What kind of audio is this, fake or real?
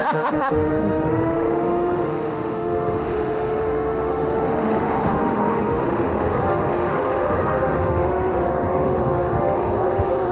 fake